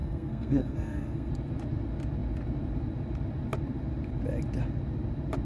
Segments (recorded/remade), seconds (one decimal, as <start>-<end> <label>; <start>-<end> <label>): 0.0-1.3 remade; 1.3-5.5 recorded